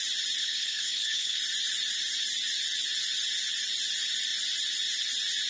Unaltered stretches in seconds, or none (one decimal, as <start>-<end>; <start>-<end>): 0.0-0.4; 1.4-5.5